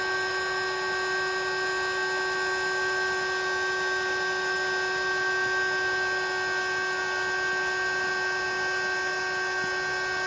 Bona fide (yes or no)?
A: yes